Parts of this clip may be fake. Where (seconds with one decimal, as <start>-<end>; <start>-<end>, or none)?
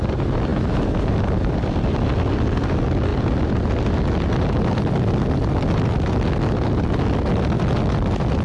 none